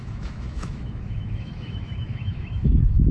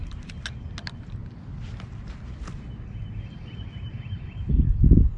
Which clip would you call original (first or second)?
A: second